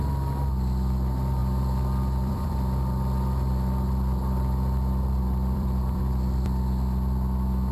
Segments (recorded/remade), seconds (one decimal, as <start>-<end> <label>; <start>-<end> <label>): 0.0-1.4 recorded; 1.4-6.0 remade; 6.0-7.7 recorded